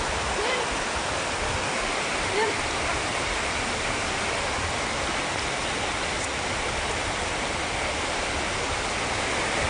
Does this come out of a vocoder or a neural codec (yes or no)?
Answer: no